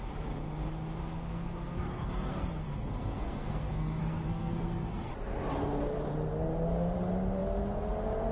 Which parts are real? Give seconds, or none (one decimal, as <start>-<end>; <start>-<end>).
0.0-1.0; 5.1-8.3